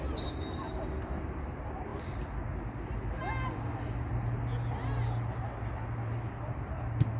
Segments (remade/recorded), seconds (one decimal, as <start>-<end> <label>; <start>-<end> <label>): 0.0-7.2 recorded